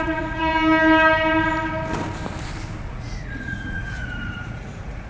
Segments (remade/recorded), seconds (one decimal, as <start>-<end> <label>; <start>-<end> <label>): 0.0-0.5 remade; 0.5-2.9 recorded; 2.9-5.1 remade

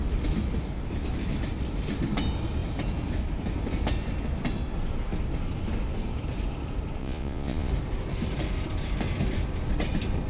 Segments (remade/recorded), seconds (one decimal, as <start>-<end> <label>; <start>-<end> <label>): 0.0-7.0 recorded; 7.0-7.7 remade; 7.7-10.3 recorded

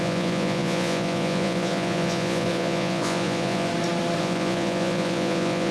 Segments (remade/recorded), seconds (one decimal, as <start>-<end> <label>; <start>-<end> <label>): 0.0-3.7 remade; 3.7-4.2 recorded; 4.2-5.7 remade